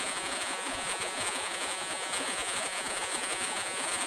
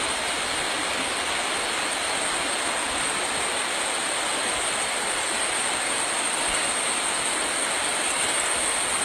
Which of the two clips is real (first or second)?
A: second